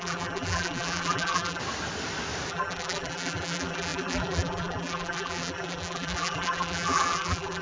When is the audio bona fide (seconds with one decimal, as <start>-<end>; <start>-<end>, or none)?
1.6-2.5